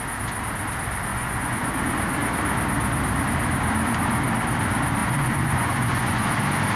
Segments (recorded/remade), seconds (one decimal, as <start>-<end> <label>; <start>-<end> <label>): 0.0-1.1 recorded; 1.1-1.7 remade; 1.7-5.0 recorded; 5.0-6.3 remade; 6.3-6.8 recorded